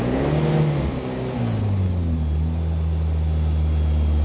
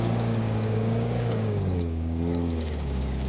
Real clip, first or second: first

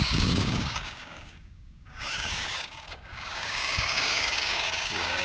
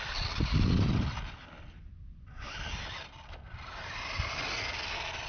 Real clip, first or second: second